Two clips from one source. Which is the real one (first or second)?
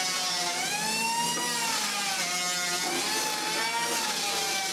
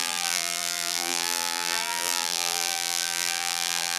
first